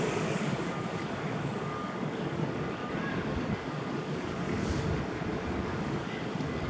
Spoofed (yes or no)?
yes